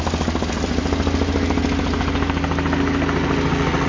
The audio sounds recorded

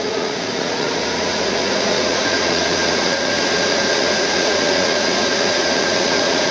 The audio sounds remade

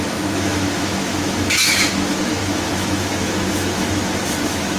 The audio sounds remade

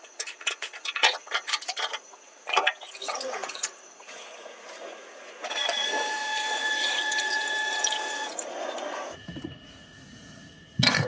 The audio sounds remade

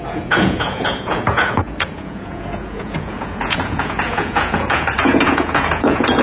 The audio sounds remade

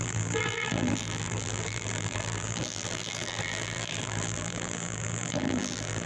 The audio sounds remade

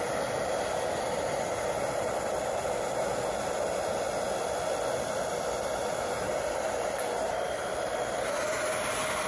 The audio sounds recorded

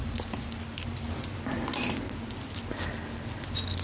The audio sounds recorded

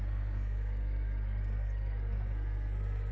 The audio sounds remade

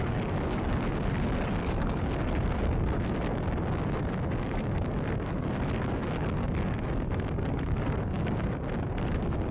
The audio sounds remade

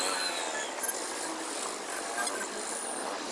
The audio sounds recorded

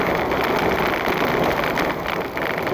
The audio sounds recorded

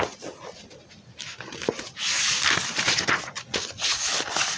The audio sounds recorded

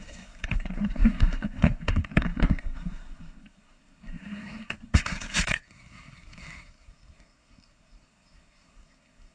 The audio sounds remade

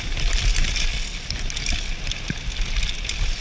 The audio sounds recorded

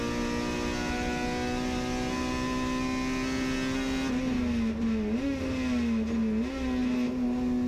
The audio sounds recorded